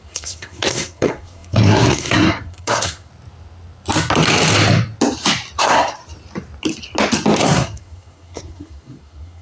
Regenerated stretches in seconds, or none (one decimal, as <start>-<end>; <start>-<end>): 0.0-3.1; 5.6-6.0; 7.4-9.4